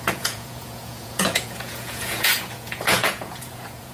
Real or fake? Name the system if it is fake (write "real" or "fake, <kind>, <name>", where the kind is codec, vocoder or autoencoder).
fake, vocoder, Vocos